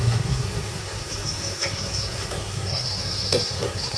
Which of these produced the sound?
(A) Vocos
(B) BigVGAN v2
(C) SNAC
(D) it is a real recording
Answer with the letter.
C